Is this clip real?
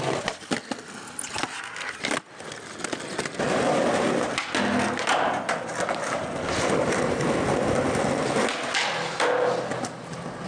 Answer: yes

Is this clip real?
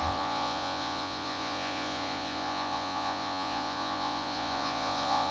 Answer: no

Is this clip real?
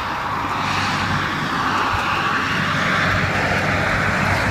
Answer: yes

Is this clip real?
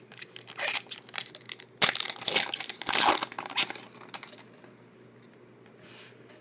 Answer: yes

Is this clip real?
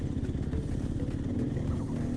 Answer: yes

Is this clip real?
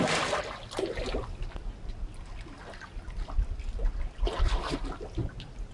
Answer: yes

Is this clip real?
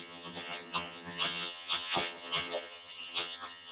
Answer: no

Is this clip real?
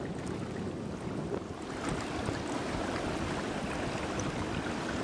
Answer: yes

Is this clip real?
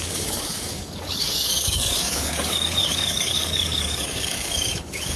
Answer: no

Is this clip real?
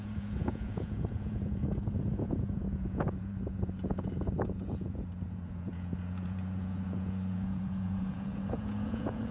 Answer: no